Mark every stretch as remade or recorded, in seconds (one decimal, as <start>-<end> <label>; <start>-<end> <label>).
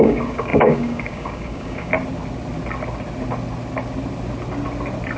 0.0-1.9 remade; 1.9-5.2 recorded